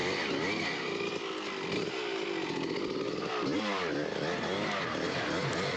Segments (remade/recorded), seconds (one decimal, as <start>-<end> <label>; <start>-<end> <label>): 0.0-5.8 recorded